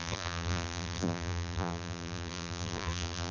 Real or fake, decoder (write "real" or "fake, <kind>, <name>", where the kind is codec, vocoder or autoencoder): fake, vocoder, BigVGAN v2